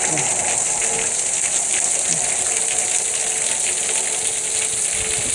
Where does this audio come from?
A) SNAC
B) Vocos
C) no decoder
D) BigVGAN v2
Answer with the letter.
C